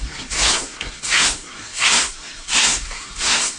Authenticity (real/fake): fake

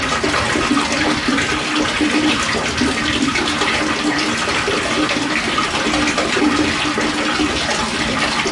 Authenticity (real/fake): real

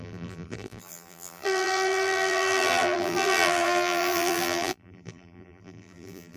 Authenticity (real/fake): fake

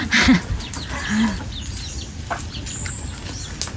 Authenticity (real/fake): real